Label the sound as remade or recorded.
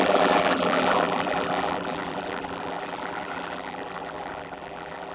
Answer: remade